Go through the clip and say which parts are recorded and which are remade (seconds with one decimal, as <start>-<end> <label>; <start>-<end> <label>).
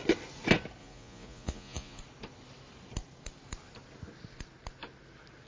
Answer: 0.0-0.8 recorded; 0.8-2.0 remade; 2.0-5.5 recorded